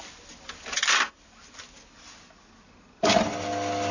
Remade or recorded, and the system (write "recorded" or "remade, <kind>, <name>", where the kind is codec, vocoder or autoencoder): recorded